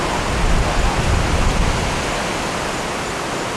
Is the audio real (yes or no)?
yes